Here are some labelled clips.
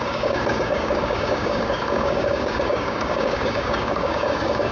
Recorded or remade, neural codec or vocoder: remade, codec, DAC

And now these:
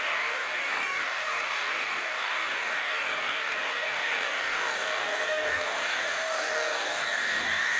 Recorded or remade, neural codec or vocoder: remade, codec, DAC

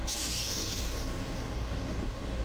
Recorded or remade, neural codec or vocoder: remade, codec, DAC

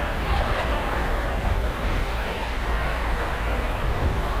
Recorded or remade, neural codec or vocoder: remade, codec, DAC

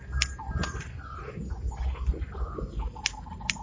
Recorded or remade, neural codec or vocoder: recorded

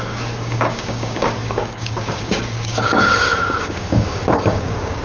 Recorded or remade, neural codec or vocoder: remade, codec, DAC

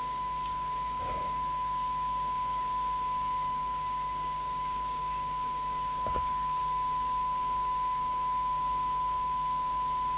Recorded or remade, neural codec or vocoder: remade, codec, DAC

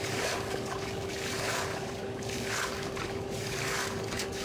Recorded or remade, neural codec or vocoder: remade, codec, DAC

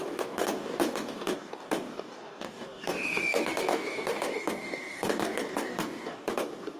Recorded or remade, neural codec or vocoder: remade, codec, DAC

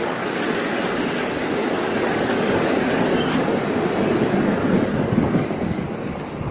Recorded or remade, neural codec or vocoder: remade, codec, DAC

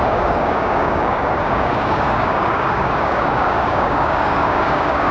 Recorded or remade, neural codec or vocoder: remade, codec, DAC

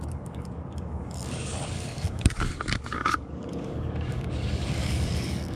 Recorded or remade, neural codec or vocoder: remade, codec, DAC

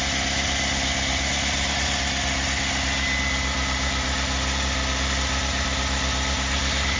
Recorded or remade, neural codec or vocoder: recorded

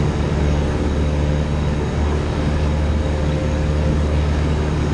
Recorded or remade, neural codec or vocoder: remade, codec, DAC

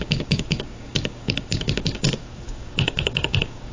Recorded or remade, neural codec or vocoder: remade, codec, DAC